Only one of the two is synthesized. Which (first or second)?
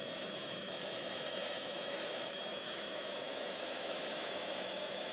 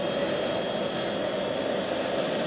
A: first